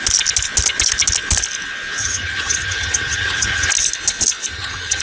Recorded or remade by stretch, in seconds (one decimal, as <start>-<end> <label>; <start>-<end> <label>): 0.0-2.0 recorded; 2.0-3.7 remade; 3.7-4.5 recorded; 4.5-5.0 remade